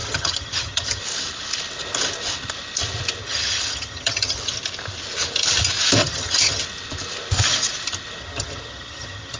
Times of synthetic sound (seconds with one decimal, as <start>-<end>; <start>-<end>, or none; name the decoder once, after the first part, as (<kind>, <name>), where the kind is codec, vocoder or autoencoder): 0.0-1.0 (vocoder, HiFi-GAN); 3.2-4.5; 6.0-6.6; 8.2-9.4